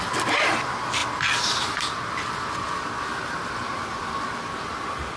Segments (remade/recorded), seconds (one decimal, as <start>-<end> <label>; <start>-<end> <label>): 0.0-5.2 recorded